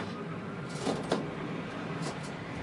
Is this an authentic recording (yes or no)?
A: no